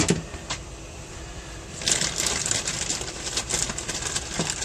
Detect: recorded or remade remade